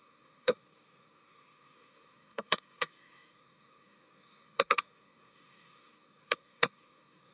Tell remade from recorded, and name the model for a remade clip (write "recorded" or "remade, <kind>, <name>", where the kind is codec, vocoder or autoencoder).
remade, codec, SNAC